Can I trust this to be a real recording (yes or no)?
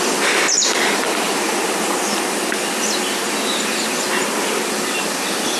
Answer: yes